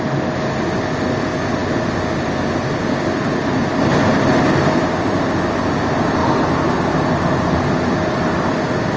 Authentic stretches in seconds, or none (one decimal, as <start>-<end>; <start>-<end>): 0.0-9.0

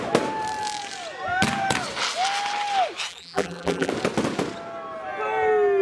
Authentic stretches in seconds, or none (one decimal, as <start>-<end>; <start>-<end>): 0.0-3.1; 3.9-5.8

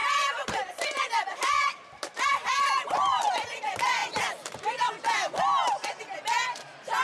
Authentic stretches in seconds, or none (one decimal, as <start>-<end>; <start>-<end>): 3.2-4.0; 4.9-7.0

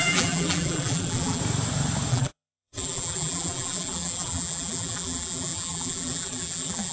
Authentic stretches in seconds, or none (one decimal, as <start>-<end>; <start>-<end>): 1.4-2.1